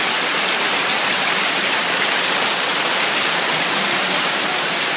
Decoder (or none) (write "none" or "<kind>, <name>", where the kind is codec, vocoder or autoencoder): vocoder, BigVGAN v2